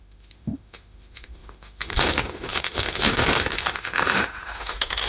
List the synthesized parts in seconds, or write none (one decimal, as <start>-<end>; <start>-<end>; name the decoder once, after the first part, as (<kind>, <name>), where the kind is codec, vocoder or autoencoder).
0.0-5.1 (autoencoder, DAC-VAE)